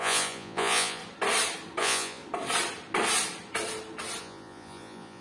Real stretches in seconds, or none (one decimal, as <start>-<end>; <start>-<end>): 1.0-1.8; 2.2-4.2